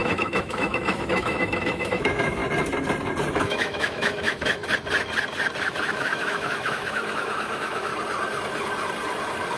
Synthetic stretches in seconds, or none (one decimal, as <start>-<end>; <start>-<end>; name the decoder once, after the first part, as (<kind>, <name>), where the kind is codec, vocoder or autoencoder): 0.0-2.4 (autoencoder, DAC-VAE); 3.3-4.6; 5.6-7.9